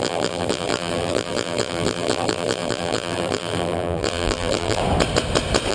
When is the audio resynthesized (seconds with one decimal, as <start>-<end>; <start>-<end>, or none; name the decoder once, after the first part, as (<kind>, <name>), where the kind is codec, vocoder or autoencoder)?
0.0-4.8 (vocoder, BigVGAN v2)